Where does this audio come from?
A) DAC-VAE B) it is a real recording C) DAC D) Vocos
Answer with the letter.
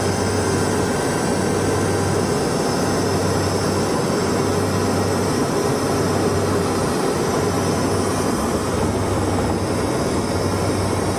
B